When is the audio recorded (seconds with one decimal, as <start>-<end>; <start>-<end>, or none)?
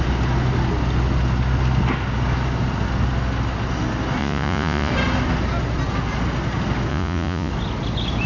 0.0-4.2; 4.9-6.9; 7.5-8.3